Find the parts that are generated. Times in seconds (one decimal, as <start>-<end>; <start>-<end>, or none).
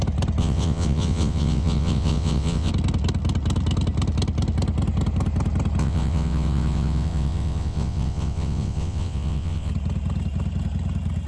0.4-2.7; 5.8-9.7